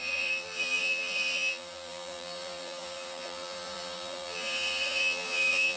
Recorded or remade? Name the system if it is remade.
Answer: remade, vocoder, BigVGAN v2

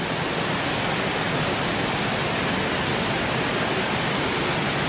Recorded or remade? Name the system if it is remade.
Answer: recorded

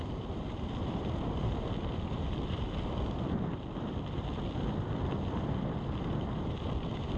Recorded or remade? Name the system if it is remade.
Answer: remade, vocoder, BigVGAN v2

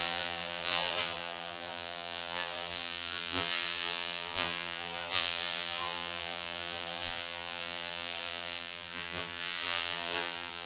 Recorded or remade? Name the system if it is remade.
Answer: remade, vocoder, BigVGAN v2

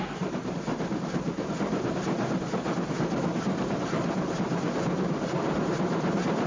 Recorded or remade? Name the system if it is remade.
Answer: remade, vocoder, BigVGAN v2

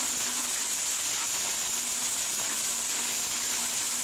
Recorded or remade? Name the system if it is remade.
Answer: recorded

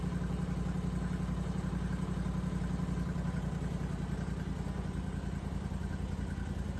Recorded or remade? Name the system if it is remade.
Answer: recorded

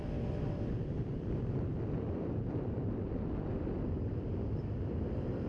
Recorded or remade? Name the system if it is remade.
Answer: remade, vocoder, BigVGAN v2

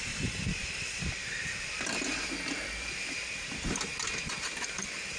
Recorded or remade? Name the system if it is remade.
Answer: remade, vocoder, BigVGAN v2